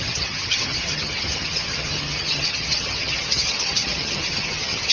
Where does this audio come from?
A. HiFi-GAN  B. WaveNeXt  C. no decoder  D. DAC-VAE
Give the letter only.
A